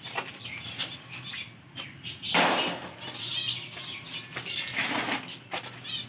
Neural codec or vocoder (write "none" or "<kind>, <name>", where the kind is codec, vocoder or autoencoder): none